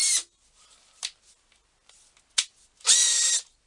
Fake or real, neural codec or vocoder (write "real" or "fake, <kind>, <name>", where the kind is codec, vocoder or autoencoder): real